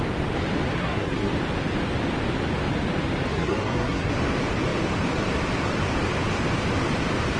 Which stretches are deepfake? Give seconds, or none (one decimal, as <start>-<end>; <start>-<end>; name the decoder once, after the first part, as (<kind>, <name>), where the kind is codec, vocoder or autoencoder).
0.7-1.3 (codec, SNAC); 3.3-4.1

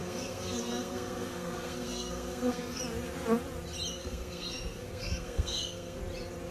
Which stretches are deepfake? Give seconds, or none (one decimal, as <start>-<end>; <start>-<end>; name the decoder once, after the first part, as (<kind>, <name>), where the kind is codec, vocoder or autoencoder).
0.0-2.8 (codec, SNAC); 4.0-6.0

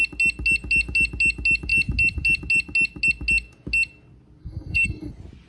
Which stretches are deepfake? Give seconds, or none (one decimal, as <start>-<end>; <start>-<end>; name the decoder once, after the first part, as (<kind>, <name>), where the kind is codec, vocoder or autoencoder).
4.4-5.1 (codec, SNAC)

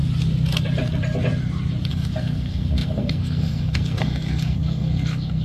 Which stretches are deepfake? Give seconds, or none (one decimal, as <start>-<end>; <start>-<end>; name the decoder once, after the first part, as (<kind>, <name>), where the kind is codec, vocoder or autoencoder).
1.9-5.4 (codec, SNAC)